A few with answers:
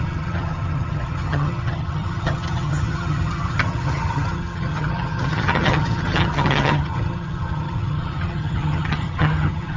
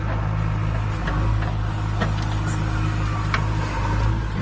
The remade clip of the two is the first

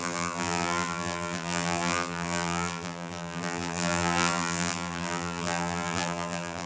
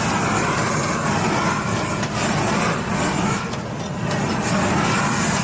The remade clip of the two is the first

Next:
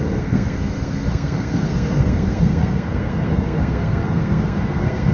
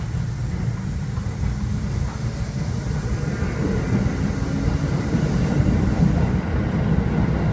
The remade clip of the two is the first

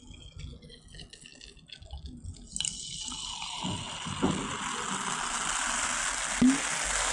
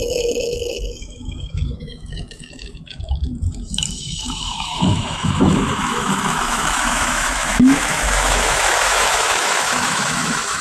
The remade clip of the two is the second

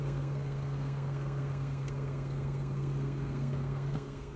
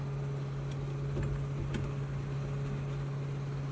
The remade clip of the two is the first